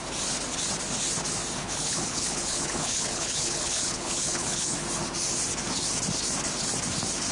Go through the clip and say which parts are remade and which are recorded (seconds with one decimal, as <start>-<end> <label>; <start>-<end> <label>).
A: 0.0-1.6 recorded; 1.6-4.7 remade; 4.7-7.3 recorded